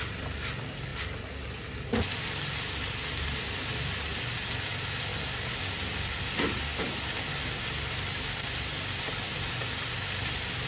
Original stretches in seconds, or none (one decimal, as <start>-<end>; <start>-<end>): 0.0-10.7